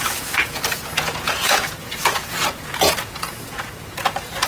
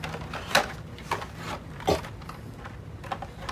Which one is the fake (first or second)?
first